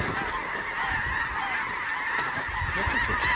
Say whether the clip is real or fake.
real